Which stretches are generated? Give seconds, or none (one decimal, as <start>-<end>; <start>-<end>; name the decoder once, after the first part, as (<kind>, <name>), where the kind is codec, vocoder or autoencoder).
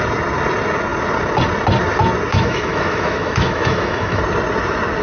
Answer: 2.3-4.2 (autoencoder, DAC-VAE)